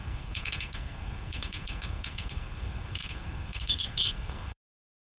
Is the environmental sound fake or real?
fake